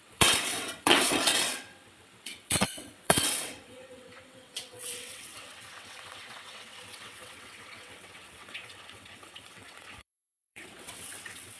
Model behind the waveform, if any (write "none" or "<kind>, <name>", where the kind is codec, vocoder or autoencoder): vocoder, WaveNeXt